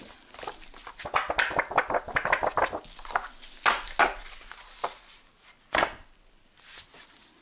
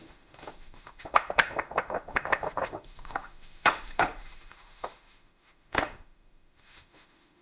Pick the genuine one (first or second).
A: first